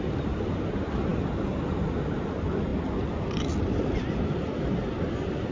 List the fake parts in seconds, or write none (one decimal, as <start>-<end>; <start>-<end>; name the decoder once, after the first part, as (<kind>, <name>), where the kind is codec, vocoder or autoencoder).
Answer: none